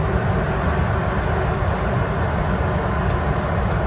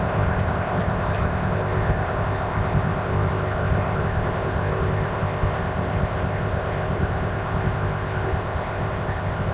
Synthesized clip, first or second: second